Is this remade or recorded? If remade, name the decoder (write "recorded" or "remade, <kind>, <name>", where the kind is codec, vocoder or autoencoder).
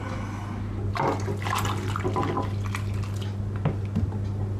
recorded